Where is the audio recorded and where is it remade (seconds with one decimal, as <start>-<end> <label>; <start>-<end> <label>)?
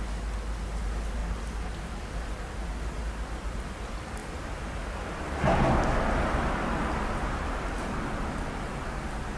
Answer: 0.0-9.4 recorded